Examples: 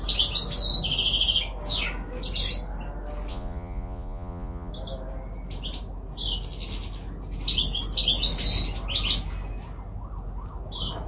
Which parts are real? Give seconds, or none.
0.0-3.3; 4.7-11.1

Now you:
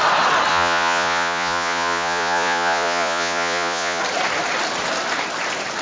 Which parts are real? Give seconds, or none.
0.0-0.5; 4.0-5.8

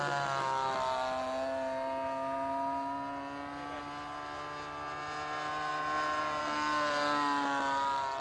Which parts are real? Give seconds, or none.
0.0-8.2